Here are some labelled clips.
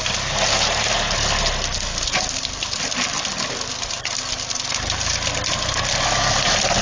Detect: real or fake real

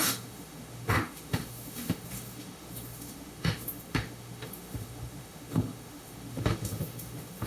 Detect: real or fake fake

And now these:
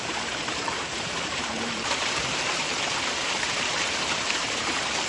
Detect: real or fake fake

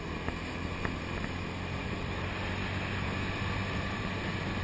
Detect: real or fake real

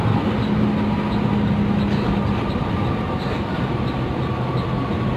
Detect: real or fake real